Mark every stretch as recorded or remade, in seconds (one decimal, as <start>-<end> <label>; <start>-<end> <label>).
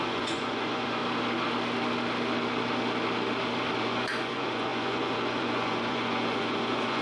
0.0-1.0 remade; 1.0-3.8 recorded; 3.8-7.0 remade